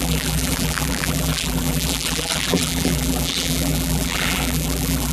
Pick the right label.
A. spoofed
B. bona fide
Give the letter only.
A